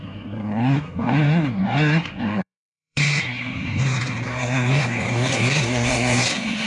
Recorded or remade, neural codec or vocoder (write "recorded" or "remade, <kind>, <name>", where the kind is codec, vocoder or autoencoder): remade, codec, SNAC